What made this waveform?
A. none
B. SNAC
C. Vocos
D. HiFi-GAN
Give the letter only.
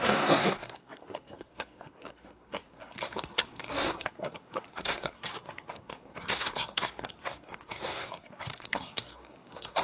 B